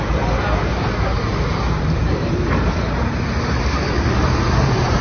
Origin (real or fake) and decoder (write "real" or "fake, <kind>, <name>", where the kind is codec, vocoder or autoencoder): fake, vocoder, BigVGAN v2